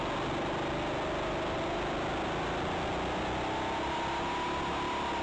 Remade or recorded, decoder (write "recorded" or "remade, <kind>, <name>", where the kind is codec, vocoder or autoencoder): recorded